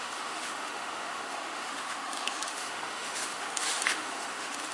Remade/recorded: remade